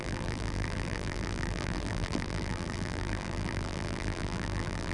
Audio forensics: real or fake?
fake